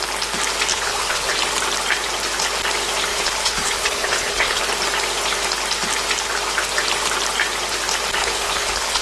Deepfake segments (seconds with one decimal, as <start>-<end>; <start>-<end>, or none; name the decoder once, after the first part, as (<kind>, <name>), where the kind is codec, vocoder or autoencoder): 0.7-1.3 (codec, HILCodec); 3.1-4.6; 8.2-9.0